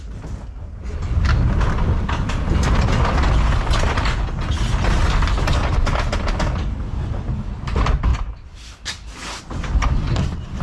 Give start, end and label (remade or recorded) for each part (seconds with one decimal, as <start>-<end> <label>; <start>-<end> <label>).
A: 0.0-10.6 recorded